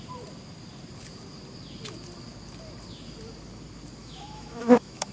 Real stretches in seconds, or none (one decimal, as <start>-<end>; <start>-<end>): 0.0-4.0